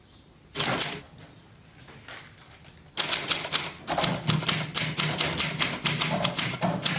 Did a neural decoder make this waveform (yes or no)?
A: no